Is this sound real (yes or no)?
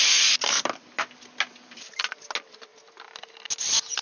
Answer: yes